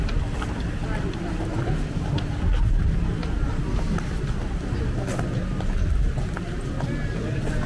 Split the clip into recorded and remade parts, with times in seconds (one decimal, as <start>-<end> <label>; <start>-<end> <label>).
0.0-7.7 recorded